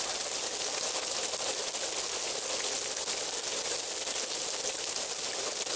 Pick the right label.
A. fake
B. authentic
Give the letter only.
B